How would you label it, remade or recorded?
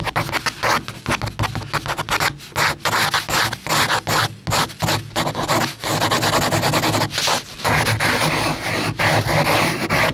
recorded